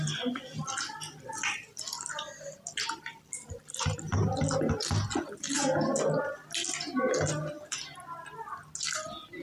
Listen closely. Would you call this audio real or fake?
real